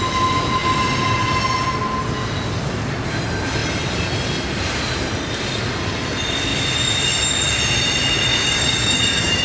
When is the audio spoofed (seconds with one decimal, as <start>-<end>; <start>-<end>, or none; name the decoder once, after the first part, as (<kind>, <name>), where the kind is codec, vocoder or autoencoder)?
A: 8.3-9.4 (codec, DAC)